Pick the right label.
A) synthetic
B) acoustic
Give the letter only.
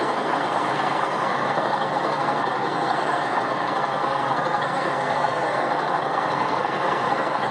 A